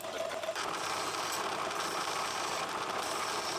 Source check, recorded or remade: recorded